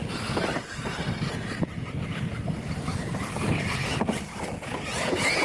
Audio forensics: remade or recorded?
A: recorded